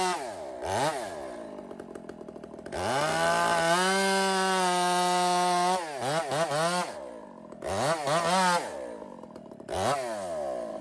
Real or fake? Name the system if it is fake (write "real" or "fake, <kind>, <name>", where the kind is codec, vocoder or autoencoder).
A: real